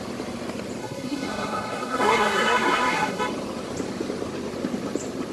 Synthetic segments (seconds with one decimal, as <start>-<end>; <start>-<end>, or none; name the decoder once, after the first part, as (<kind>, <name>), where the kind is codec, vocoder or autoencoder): 0.8-3.2 (codec, SNAC)